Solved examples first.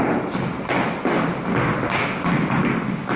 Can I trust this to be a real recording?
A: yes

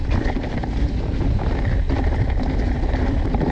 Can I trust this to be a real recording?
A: yes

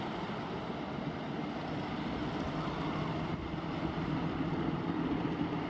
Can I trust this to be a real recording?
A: no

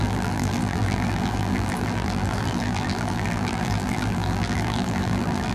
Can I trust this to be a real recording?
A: no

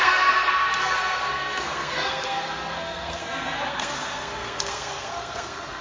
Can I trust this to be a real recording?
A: no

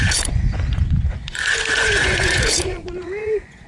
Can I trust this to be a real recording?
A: no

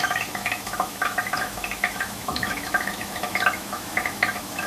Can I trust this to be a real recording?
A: no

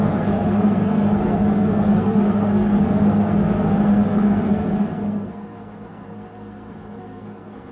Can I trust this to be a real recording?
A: no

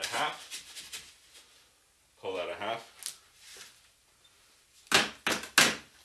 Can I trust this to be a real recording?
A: yes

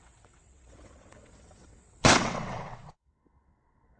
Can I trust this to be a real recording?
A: no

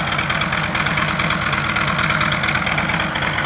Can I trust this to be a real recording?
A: yes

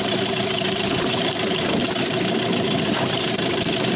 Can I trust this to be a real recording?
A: no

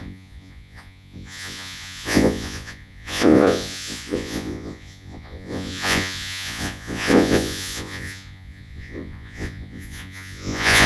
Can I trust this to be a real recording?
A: no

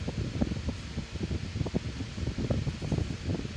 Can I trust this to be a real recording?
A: yes